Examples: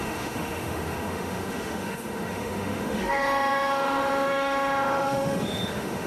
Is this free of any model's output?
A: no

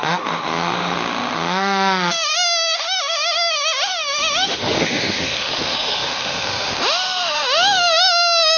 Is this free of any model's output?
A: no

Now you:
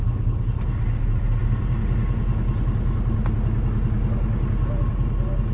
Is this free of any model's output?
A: yes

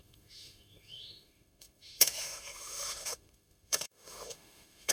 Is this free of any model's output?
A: no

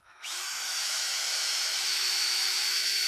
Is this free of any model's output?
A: no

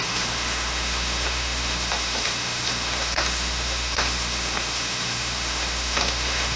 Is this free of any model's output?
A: no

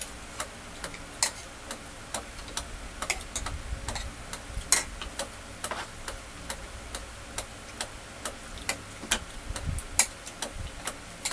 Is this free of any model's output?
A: yes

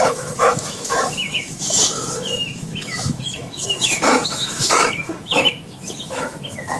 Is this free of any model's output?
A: no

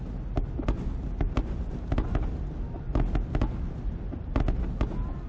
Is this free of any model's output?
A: yes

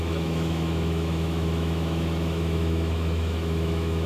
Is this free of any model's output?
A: no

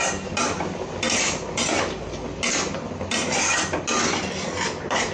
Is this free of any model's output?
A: yes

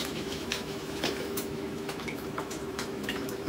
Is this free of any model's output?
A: no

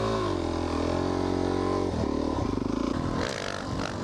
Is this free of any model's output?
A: yes